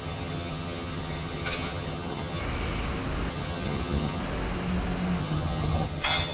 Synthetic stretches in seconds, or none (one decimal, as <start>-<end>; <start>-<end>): 0.0-2.4; 3.3-4.2; 5.2-6.3

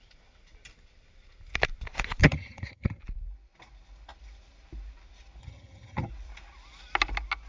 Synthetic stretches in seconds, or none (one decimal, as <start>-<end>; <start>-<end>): 2.2-3.0; 5.4-6.1

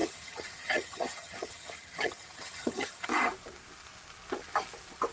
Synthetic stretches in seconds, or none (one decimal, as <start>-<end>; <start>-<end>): 0.0-3.1

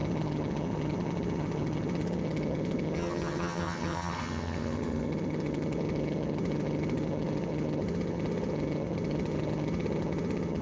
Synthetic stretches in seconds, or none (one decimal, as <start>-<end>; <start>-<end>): 0.0-10.6

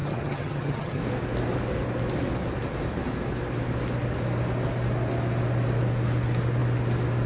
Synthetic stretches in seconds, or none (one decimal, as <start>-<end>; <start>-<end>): 0.0-1.0